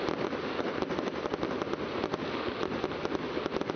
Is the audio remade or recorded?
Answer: recorded